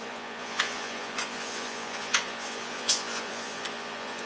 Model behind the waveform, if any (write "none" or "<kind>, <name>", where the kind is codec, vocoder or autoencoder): vocoder, Vocos